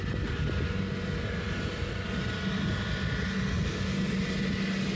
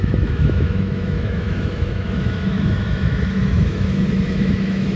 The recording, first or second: first